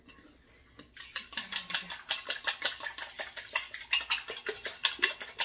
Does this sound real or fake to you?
real